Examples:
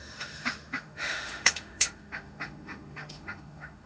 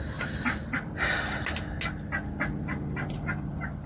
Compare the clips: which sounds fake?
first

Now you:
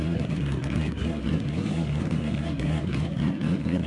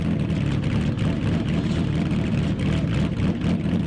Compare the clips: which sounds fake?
first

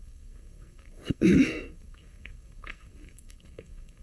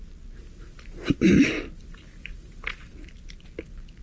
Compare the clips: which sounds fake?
first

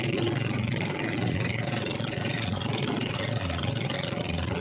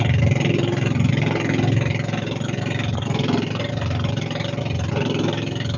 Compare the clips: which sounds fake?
first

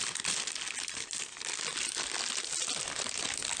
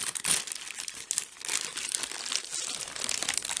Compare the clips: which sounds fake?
second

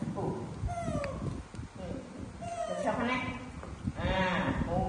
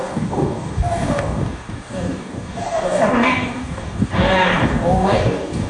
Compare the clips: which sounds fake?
second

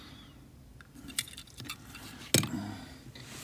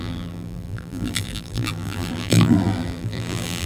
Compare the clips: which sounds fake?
second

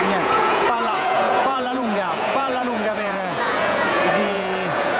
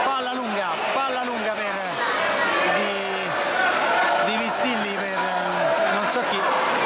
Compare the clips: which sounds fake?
first